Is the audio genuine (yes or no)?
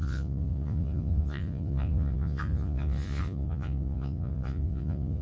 no